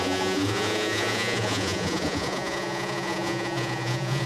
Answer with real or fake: fake